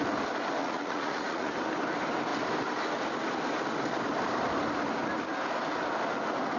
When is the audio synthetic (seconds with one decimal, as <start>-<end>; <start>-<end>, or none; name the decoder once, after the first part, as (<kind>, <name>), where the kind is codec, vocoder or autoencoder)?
0.6-1.5 (vocoder, Vocos)